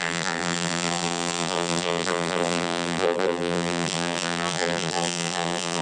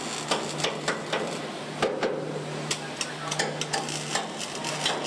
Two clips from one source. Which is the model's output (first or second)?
first